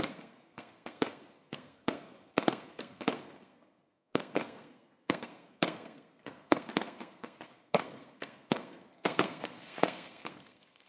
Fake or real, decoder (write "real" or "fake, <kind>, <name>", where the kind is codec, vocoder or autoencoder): fake, codec, SNAC